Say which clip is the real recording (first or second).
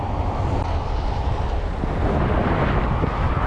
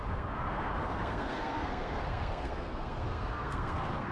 first